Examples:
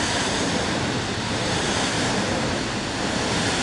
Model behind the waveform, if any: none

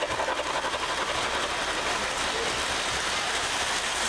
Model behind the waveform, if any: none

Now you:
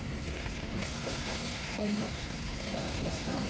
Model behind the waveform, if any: codec, SNAC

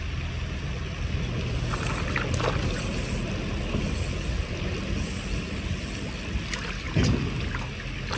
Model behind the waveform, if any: none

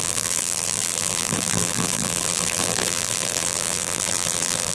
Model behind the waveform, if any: vocoder, BigVGAN v2